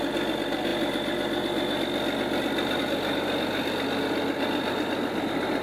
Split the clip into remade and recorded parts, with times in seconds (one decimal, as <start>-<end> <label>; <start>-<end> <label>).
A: 0.0-5.6 recorded